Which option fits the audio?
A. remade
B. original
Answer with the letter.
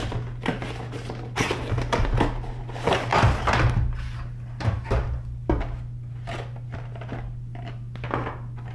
B